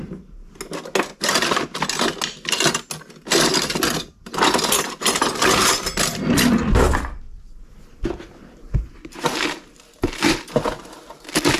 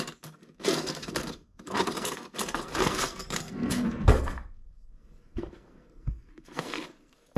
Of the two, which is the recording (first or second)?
first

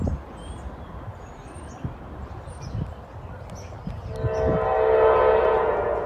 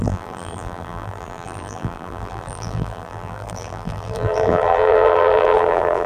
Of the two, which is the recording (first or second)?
first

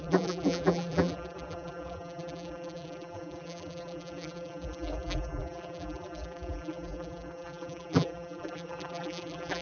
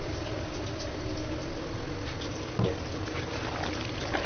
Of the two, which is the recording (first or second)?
second